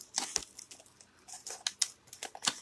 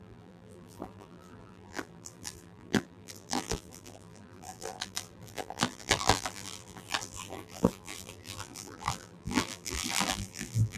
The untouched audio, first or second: first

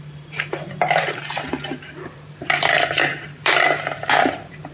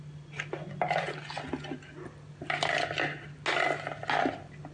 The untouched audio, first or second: second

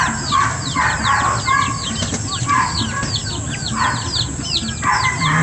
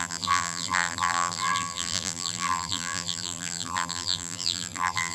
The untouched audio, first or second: first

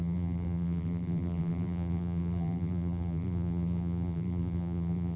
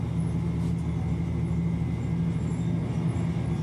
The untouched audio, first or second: second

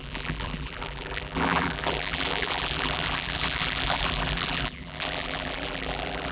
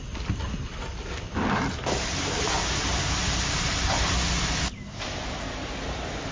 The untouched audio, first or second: second